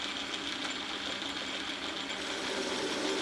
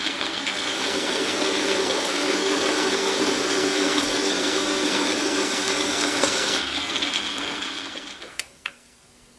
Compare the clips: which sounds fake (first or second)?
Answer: second